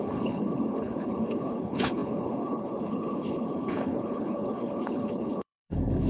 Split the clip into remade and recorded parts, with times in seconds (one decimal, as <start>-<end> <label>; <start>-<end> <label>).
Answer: 0.0-6.1 remade